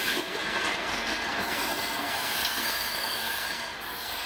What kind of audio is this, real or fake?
fake